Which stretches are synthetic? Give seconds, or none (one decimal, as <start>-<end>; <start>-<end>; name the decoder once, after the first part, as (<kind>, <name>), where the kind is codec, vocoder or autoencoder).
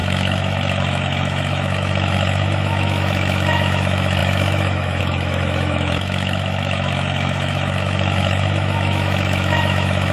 0.0-10.1 (autoencoder, DAC-VAE)